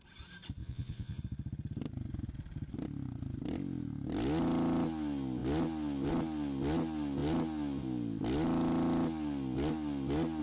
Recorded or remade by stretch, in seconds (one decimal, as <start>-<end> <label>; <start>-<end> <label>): 0.0-0.6 recorded; 0.6-1.2 remade; 1.2-10.4 recorded